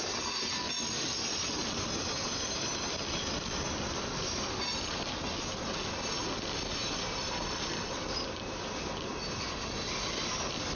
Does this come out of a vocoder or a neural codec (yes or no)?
no